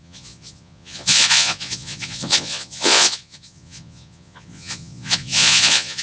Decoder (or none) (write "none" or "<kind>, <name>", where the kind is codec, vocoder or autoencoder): vocoder, Vocos